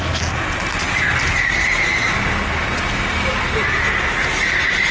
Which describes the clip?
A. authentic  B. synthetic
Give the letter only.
A